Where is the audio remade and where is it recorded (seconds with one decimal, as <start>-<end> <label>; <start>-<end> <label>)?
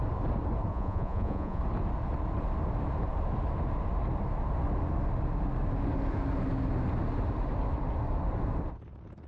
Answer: 0.0-0.7 recorded; 0.7-1.6 remade; 1.6-9.3 recorded